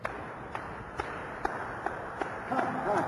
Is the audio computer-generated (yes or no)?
no